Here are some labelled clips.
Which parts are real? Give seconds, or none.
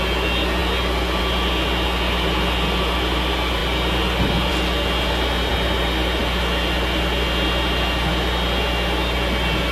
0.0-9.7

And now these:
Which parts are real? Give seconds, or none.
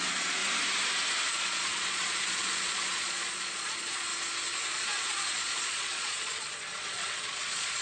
0.4-1.3; 4.1-4.7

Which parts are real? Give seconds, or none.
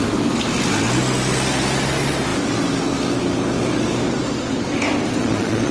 0.0-5.2